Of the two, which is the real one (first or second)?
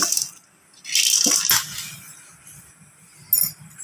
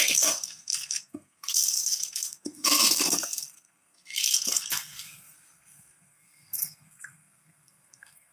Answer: first